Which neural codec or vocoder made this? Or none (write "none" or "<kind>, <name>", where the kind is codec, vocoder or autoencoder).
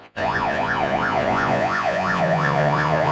vocoder, Vocos